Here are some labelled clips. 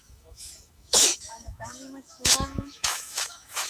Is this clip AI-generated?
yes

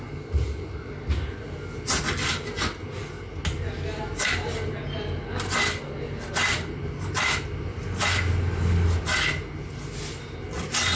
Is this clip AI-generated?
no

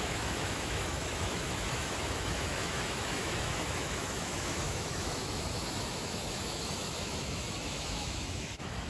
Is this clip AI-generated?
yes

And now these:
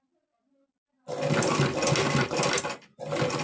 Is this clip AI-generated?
no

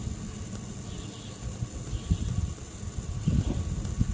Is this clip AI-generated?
no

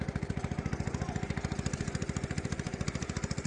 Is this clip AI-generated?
no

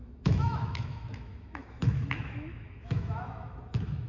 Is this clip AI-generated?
yes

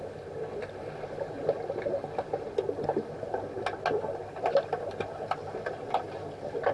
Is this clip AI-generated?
no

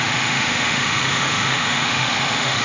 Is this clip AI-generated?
yes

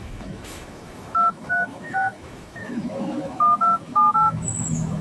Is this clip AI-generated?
yes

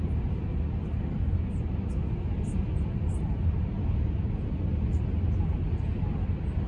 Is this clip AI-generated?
no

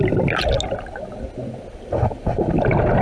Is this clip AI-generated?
no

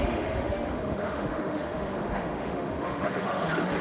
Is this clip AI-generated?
yes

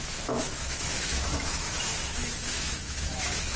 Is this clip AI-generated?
yes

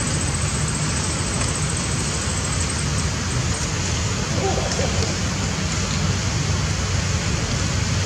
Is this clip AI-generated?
no